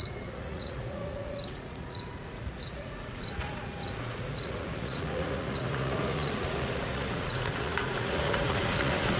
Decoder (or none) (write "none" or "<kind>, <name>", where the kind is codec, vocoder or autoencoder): vocoder, Vocos